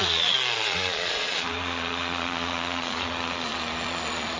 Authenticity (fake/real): fake